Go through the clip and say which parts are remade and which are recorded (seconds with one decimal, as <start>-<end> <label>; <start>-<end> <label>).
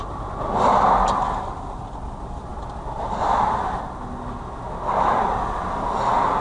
0.0-6.4 recorded